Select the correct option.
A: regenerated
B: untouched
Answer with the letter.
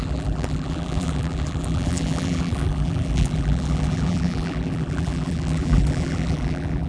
A